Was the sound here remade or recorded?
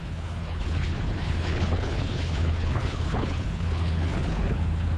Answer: remade